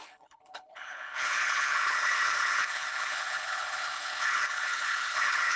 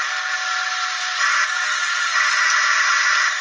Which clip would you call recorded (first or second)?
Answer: second